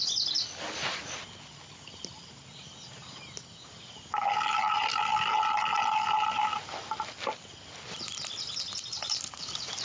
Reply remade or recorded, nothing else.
recorded